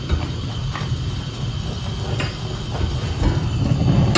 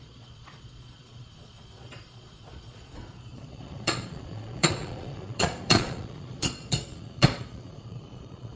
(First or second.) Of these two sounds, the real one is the first